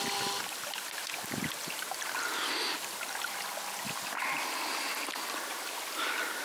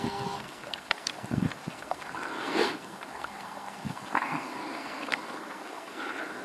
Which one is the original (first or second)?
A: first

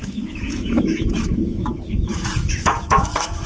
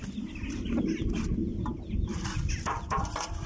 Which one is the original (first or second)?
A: second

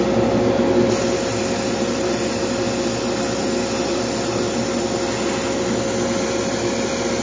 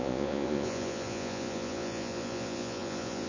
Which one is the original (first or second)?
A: first